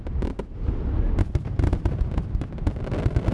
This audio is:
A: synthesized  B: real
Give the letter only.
B